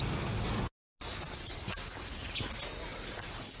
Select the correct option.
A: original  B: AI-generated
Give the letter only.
A